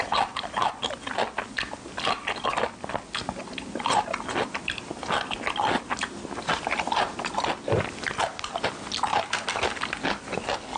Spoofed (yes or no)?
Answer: no